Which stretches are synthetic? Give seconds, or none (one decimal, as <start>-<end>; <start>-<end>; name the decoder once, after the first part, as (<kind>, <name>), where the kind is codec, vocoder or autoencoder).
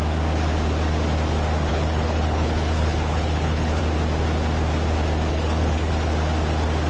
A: 1.7-3.8 (codec, HILCodec); 5.3-5.9